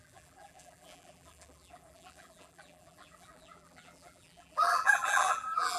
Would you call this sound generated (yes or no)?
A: yes